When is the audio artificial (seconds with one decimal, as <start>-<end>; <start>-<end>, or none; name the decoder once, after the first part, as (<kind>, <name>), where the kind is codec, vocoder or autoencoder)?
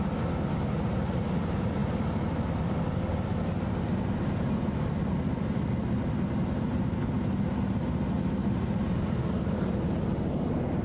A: none